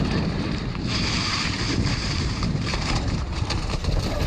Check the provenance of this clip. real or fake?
fake